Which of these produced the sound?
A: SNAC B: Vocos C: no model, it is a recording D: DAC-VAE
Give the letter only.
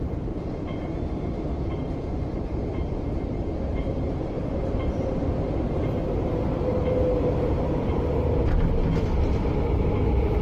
C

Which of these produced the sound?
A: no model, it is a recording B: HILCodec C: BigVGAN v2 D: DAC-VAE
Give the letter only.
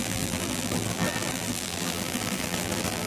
C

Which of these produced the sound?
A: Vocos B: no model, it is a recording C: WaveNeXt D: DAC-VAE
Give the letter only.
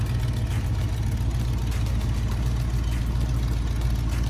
B